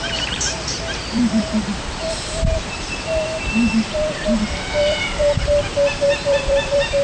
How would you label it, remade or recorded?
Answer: remade